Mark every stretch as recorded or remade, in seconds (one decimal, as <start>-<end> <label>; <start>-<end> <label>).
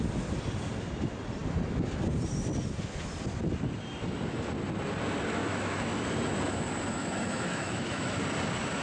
0.0-5.4 recorded; 5.4-5.9 remade; 5.9-7.0 recorded; 7.0-8.2 remade; 8.2-8.8 recorded